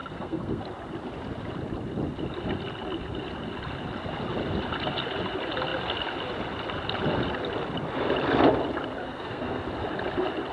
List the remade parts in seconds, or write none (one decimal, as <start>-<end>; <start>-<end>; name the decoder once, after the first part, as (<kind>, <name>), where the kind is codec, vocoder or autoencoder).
0.0-0.6 (codec, SNAC); 9.0-9.6